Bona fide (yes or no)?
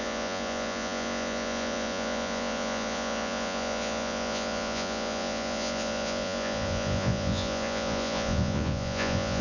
no